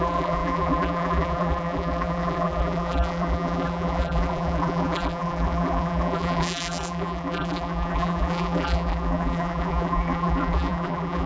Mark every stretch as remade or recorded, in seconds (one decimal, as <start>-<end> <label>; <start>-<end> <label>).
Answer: 0.0-11.3 remade